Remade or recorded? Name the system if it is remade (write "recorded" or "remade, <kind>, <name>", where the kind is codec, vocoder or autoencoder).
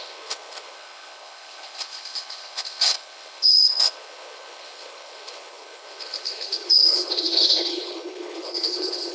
remade, codec, HILCodec